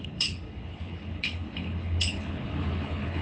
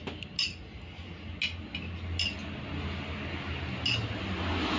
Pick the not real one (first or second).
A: first